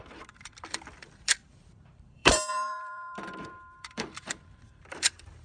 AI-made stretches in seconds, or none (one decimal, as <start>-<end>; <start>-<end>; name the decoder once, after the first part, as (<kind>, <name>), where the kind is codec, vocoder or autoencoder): 0.0-5.4 (vocoder, BigVGAN v2)